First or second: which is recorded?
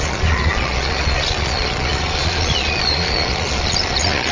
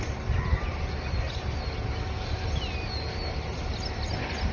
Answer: second